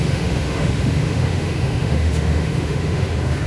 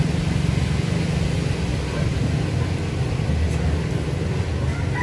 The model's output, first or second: first